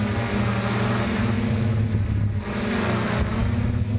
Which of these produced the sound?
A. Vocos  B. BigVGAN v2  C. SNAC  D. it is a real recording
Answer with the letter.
D